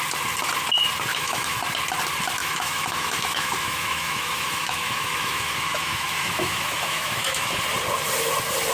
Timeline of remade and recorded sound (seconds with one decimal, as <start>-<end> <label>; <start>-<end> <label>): 0.0-1.1 recorded; 1.1-1.6 remade; 1.6-2.4 recorded; 2.4-7.6 remade; 7.6-8.7 recorded